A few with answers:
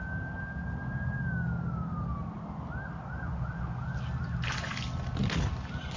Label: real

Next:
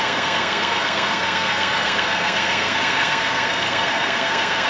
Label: fake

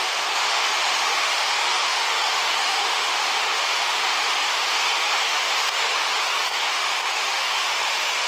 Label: fake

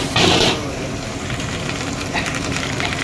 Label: fake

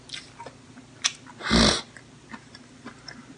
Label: real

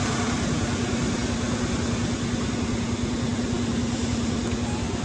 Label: real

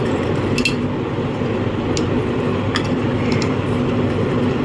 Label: real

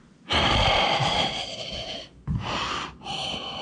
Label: fake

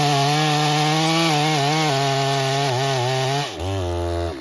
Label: real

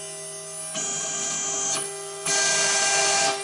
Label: real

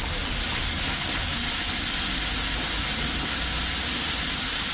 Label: real